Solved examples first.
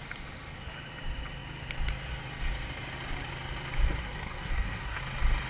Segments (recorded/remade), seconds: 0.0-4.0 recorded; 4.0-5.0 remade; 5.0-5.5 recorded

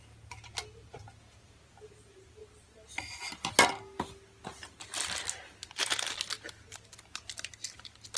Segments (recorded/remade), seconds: 0.0-8.2 recorded